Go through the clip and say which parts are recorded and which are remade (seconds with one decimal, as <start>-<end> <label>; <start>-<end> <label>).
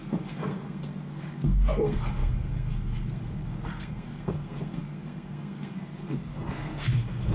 0.0-7.3 remade